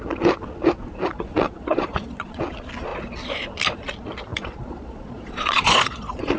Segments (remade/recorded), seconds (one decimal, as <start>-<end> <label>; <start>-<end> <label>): 0.0-1.1 recorded; 1.1-2.4 remade; 2.4-4.3 recorded; 4.3-6.4 remade